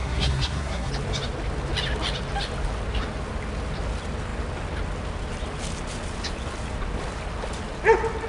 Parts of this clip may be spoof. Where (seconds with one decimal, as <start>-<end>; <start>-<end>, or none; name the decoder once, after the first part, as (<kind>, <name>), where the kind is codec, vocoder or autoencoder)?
0.0-0.9 (codec, SNAC)